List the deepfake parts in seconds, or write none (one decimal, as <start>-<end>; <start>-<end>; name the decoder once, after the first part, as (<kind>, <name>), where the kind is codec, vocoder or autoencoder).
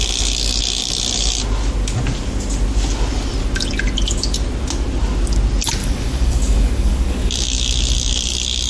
5.8-7.3 (codec, DAC)